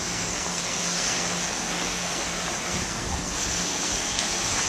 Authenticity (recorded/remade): remade